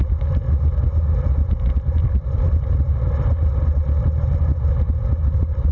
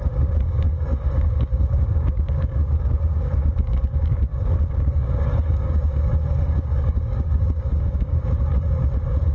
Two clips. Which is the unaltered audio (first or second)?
first